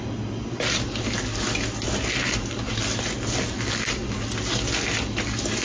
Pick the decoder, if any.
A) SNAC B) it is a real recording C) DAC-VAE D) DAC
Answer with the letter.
B